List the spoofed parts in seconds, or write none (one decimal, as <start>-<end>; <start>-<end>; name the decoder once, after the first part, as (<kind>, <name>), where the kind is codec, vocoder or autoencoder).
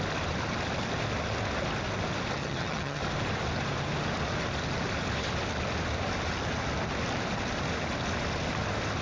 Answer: 2.4-3.0 (vocoder, HiFi-GAN)